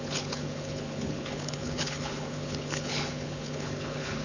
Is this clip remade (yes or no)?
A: yes